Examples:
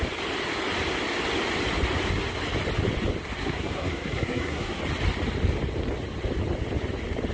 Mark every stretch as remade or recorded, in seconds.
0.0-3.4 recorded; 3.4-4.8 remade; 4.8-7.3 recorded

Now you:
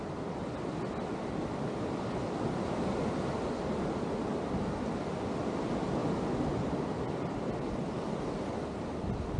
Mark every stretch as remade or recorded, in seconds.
0.0-9.4 recorded

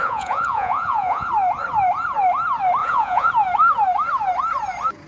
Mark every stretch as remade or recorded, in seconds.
0.0-1.3 remade; 1.3-2.8 recorded; 2.8-3.3 remade; 3.3-5.1 recorded

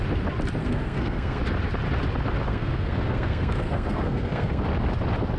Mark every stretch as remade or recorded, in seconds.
0.0-0.6 recorded; 0.6-1.4 remade; 1.4-2.5 recorded; 2.5-4.6 remade; 4.6-5.4 recorded

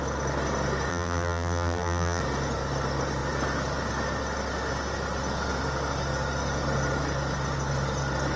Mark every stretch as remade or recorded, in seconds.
0.0-0.9 recorded; 0.9-2.2 remade; 2.2-8.4 recorded